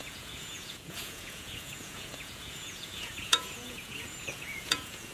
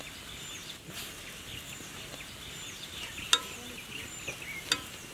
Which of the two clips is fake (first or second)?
first